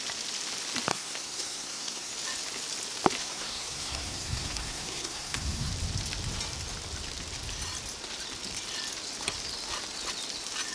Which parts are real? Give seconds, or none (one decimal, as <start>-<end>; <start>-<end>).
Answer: 0.0-0.9; 2.1-3.2; 5.7-10.7